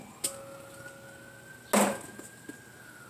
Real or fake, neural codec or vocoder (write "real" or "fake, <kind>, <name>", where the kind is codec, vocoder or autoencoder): real